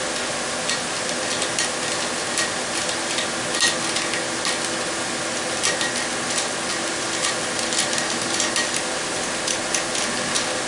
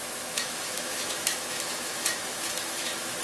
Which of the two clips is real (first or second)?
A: first